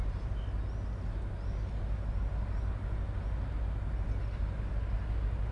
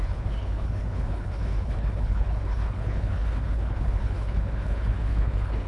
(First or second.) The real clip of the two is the first